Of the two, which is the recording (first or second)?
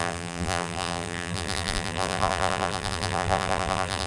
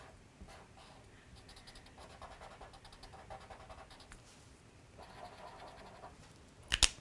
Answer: second